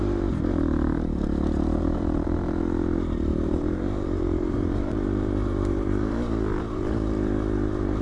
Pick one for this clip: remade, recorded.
remade